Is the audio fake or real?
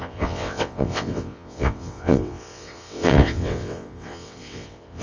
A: fake